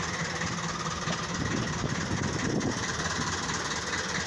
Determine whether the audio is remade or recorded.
remade